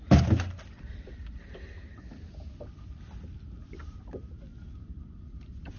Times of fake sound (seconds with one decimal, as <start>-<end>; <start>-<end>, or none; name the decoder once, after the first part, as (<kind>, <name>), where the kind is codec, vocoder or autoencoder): none